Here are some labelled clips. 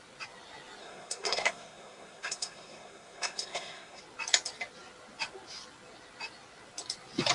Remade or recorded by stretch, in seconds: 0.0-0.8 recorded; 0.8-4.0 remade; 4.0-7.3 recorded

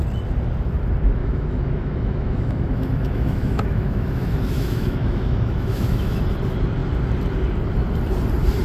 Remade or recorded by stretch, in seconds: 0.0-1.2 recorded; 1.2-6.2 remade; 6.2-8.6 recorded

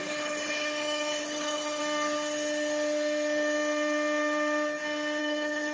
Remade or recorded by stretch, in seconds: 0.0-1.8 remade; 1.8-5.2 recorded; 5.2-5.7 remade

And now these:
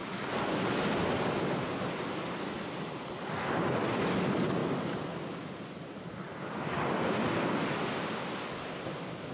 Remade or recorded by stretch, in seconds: 0.0-2.0 remade; 2.0-4.6 recorded; 4.6-7.5 remade; 7.5-9.3 recorded

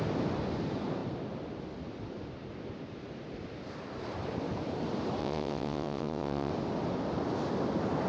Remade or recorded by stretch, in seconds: 0.0-5.2 recorded; 5.2-6.5 remade; 6.5-8.1 recorded

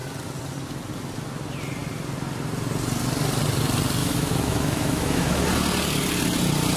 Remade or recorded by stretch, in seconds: 0.0-4.0 recorded; 4.0-5.4 remade; 5.4-6.8 recorded

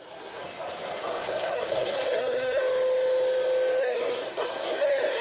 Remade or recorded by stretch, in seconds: 0.0-0.4 remade; 0.4-1.0 recorded; 1.0-2.6 remade; 2.6-3.8 recorded; 3.8-5.2 remade